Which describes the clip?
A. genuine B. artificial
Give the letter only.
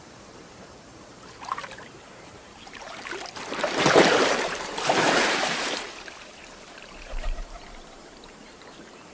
B